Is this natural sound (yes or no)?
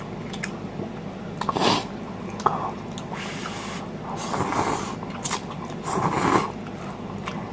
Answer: yes